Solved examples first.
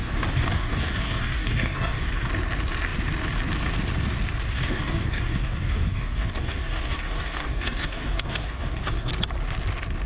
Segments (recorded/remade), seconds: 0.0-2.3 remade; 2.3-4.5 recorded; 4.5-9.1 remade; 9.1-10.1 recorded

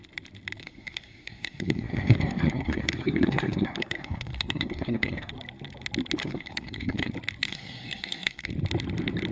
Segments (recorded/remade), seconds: 0.0-0.6 recorded; 0.6-5.3 remade; 5.3-6.2 recorded; 6.2-7.1 remade; 7.1-7.5 recorded; 7.5-8.5 remade; 8.5-9.3 recorded

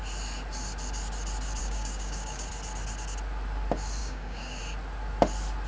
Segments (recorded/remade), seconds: 0.0-1.6 recorded; 1.6-2.5 remade; 2.5-4.0 recorded; 4.0-4.6 remade; 4.6-5.7 recorded

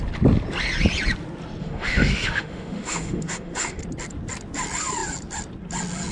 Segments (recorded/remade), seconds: 0.0-1.6 recorded; 1.6-3.8 remade; 3.8-6.1 recorded